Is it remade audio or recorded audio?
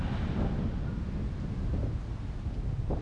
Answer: recorded